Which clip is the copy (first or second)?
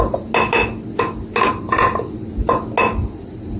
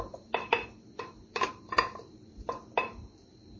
second